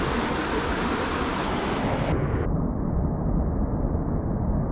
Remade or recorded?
recorded